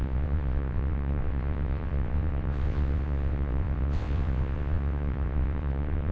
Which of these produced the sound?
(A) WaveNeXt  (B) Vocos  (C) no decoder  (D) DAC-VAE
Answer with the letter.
A